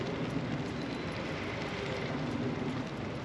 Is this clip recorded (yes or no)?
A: yes